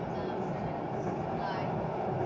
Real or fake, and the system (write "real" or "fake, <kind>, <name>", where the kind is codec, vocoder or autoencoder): real